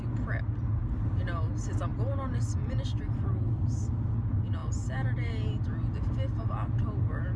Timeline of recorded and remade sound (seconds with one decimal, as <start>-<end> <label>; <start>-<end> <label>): 0.0-1.9 recorded; 1.9-3.3 remade; 3.3-7.4 recorded